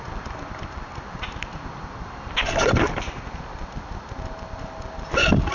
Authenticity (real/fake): real